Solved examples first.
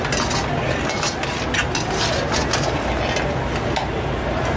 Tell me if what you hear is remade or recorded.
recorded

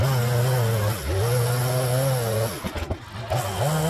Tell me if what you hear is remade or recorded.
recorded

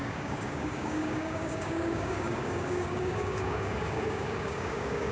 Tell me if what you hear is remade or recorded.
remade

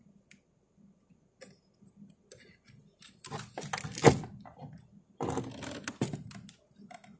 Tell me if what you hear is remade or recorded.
recorded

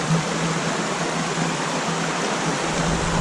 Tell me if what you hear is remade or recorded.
recorded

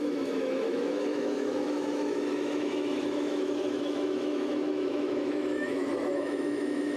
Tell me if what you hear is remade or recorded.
remade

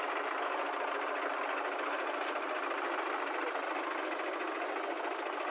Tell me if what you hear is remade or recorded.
recorded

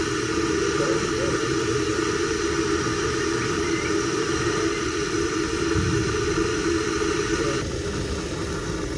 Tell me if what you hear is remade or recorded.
recorded